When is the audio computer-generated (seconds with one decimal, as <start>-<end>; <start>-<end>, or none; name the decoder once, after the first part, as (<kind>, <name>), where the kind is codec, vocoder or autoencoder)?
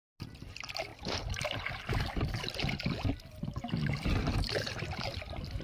0.5-0.9 (vocoder, BigVGAN v2); 4.3-5.6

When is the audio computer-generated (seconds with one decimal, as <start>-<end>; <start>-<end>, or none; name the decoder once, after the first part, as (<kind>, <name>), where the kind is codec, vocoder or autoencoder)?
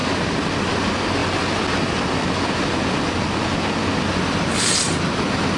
none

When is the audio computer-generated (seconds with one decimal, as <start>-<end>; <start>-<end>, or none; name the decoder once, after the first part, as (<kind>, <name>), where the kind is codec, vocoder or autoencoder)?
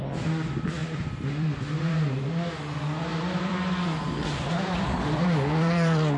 0.8-1.6 (vocoder, BigVGAN v2); 3.1-6.2